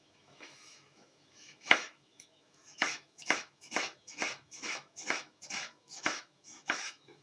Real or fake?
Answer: fake